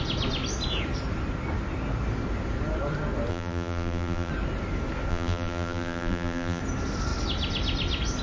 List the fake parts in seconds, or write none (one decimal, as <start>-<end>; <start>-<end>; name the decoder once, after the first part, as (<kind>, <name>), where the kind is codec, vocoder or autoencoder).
3.3-4.3 (vocoder, BigVGAN v2); 5.1-6.6